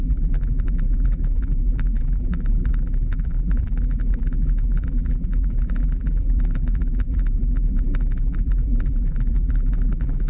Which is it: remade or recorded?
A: remade